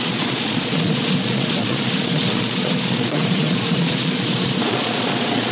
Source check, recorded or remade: remade